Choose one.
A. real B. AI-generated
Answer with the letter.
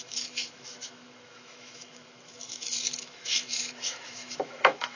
B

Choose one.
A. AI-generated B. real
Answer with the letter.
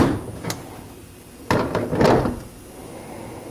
B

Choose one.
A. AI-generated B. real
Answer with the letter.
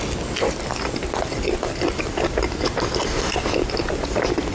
B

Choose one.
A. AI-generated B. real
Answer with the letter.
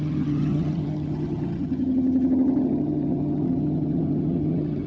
A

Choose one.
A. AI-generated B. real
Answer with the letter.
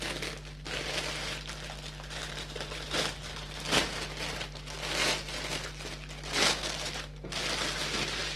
B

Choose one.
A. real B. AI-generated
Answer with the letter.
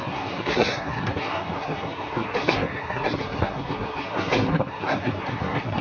B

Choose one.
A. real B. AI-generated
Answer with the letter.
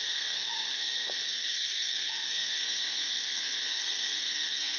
B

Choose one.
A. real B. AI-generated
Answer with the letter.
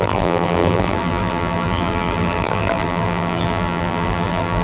B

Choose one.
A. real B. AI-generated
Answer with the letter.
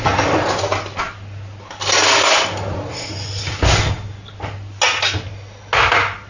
A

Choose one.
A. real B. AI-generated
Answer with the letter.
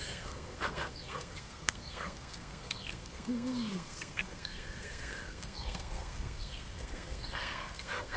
B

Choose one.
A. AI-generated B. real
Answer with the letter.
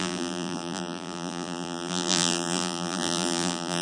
A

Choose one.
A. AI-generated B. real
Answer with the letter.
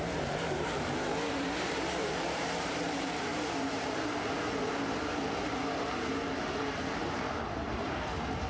A